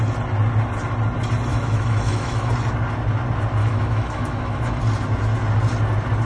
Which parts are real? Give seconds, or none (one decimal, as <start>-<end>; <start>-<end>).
0.0-1.5; 2.5-3.6; 4.8-6.3